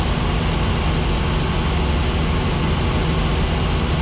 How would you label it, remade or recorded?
recorded